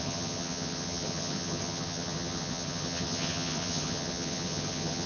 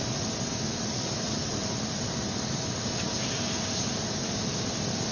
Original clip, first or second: second